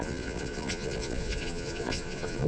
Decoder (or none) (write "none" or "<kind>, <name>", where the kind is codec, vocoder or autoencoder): vocoder, Vocos